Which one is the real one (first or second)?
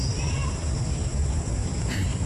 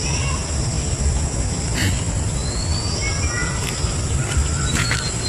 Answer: second